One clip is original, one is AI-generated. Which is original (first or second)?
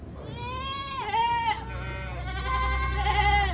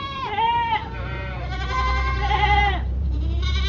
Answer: first